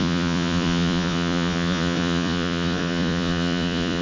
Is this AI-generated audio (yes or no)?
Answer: yes